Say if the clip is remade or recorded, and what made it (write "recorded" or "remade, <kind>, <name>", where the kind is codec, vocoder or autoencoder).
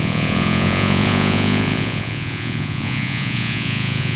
remade, vocoder, Vocos